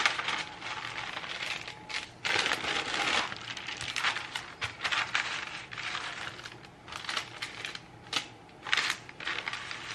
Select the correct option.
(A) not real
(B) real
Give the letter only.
B